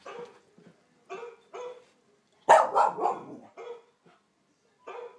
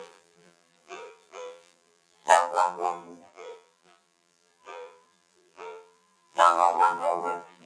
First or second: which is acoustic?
first